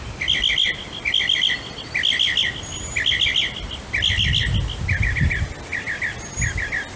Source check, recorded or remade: recorded